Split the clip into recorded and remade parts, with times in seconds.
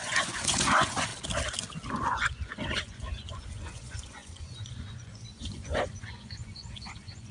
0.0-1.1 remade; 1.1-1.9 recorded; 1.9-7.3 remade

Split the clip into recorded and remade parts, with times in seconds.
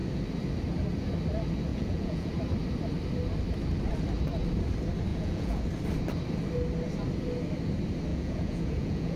0.0-1.7 recorded; 1.7-2.3 remade; 2.3-5.1 recorded; 5.1-5.6 remade; 5.6-8.1 recorded; 8.1-9.2 remade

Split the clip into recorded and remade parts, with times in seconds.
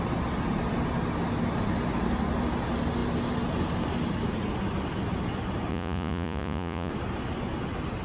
0.0-5.7 recorded; 5.7-6.9 remade; 6.9-8.0 recorded